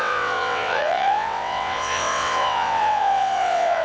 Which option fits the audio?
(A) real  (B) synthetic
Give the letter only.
B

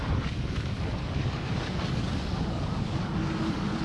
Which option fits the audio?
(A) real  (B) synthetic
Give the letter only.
B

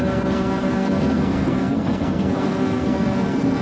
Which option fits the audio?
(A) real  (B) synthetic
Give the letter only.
B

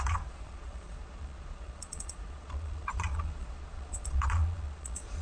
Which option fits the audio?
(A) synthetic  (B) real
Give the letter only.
A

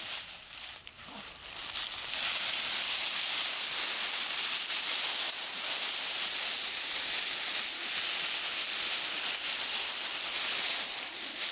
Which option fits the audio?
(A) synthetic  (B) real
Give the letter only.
B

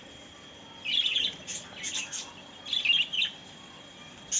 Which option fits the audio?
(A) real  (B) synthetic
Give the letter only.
A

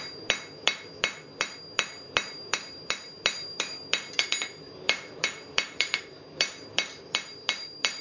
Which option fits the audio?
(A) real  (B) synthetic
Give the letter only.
B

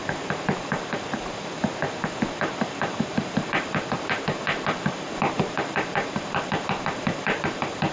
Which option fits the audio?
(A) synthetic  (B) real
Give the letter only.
A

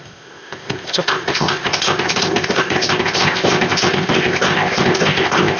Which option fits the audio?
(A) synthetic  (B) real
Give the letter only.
A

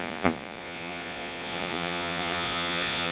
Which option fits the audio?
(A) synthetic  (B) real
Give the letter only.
A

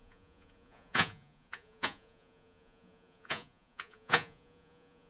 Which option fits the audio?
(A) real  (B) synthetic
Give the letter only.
B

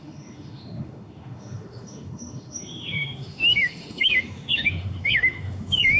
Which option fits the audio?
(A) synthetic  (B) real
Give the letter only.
A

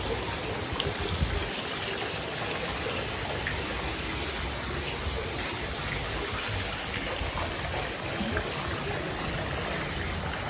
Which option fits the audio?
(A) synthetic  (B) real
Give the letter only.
B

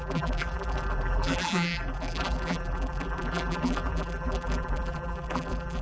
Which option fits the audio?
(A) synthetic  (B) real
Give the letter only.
A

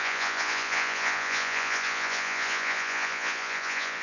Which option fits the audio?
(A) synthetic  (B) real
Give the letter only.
A